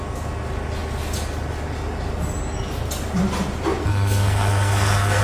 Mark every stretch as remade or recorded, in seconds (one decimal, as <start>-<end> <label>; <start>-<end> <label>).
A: 0.0-3.8 recorded; 3.8-5.2 remade